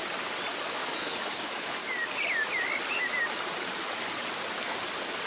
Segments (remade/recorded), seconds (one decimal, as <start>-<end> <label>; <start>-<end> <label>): 0.0-0.6 recorded; 0.6-1.8 remade; 1.8-5.3 recorded